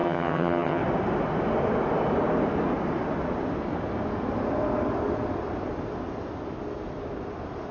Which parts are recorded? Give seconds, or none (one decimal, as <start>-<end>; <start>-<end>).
0.8-7.7